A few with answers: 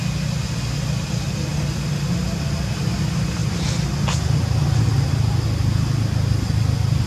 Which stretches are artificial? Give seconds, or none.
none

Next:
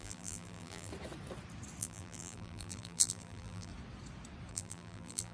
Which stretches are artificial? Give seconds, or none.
0.0-0.9; 1.8-3.7; 4.5-5.3

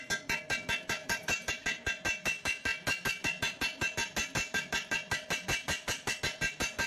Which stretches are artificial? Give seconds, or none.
1.0-1.5

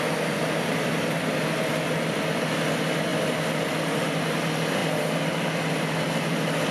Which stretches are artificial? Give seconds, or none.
none